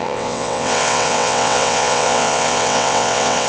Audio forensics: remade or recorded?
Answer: remade